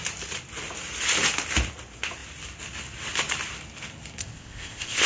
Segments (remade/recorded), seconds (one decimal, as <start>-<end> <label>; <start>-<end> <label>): 0.0-4.2 recorded; 4.2-5.1 remade

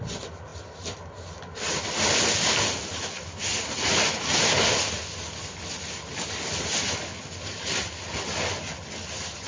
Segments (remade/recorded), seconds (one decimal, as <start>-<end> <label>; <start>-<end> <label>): 0.0-9.5 recorded

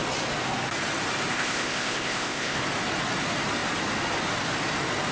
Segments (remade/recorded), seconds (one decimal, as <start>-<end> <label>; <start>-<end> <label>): 0.0-1.3 recorded; 1.3-2.6 remade; 2.6-5.1 recorded

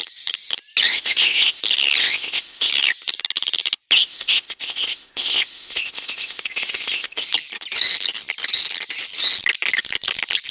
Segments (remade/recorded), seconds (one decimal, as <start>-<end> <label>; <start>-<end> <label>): 0.0-0.9 recorded; 0.9-1.6 remade; 1.6-2.0 recorded; 2.0-2.7 remade; 2.7-4.0 recorded; 4.0-7.3 remade; 7.3-10.5 recorded

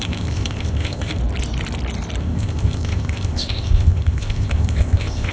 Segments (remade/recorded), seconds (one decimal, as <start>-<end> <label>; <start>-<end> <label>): 0.0-1.2 remade; 1.2-2.2 recorded; 2.2-5.3 remade